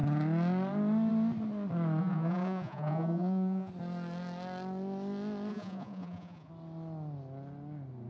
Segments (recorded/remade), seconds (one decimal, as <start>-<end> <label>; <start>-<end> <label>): 0.0-2.0 recorded; 2.0-3.7 remade; 3.7-5.5 recorded; 5.5-6.5 remade; 6.5-8.1 recorded